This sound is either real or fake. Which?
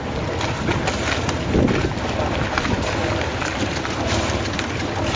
real